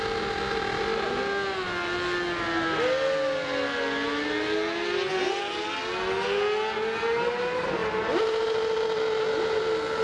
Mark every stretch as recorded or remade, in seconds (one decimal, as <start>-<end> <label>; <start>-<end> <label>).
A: 0.0-10.0 recorded